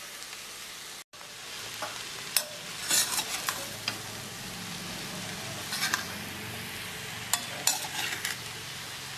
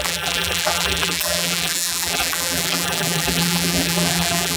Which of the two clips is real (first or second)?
first